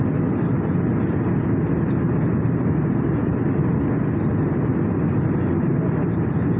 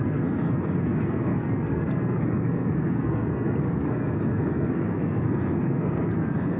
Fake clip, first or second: second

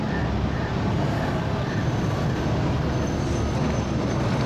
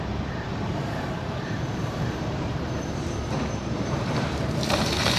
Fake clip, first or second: second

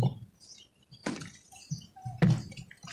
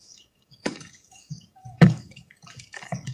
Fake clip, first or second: second